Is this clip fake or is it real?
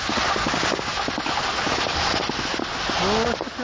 real